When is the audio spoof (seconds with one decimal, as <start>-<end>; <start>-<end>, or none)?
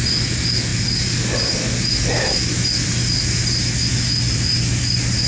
none